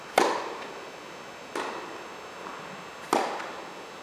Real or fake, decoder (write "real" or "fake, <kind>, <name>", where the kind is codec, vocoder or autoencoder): real